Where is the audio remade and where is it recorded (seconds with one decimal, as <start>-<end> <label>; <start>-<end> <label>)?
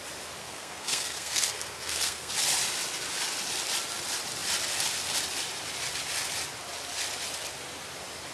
0.0-0.4 recorded; 0.4-2.3 remade; 2.3-8.3 recorded